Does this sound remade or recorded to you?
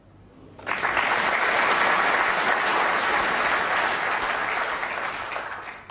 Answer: recorded